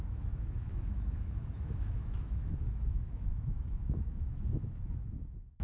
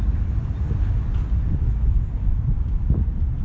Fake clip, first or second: first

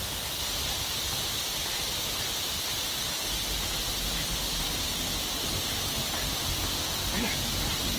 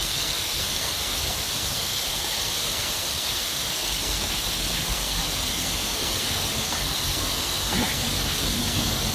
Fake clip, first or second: second